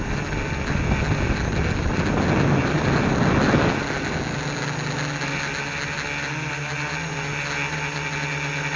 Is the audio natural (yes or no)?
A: yes